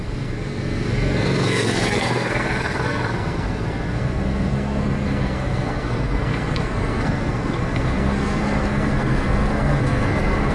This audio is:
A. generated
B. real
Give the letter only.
A